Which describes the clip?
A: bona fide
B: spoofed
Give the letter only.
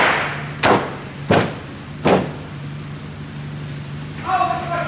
A